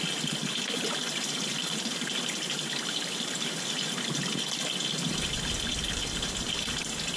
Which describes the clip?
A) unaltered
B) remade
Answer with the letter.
A